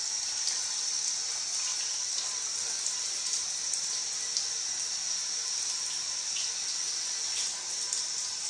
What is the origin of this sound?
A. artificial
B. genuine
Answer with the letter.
B